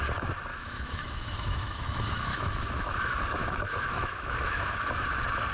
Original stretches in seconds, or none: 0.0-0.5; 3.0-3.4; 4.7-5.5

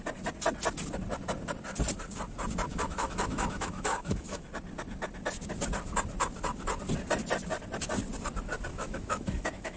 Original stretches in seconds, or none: 0.0-2.7; 4.5-8.7

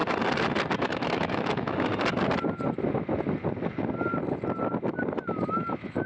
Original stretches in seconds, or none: 0.0-0.8; 1.9-5.5

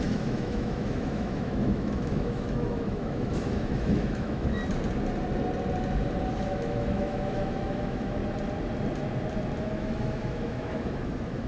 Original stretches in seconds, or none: 4.6-6.3; 8.2-9.6

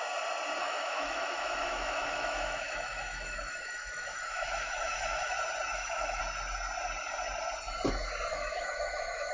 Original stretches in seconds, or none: 0.0-0.6; 5.3-5.7; 6.2-8.3